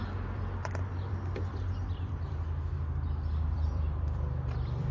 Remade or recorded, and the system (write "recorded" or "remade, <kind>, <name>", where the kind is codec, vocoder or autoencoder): remade, vocoder, BigVGAN v2